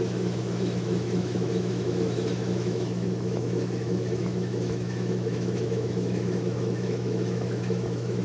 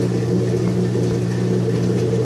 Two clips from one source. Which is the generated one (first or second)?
first